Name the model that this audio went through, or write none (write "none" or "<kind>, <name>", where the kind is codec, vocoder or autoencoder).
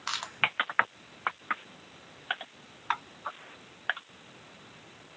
none